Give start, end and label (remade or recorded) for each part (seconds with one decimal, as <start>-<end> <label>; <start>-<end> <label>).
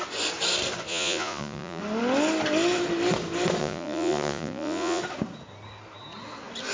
0.0-0.9 recorded; 0.9-1.8 remade; 1.8-3.6 recorded; 3.6-5.0 remade; 5.0-6.7 recorded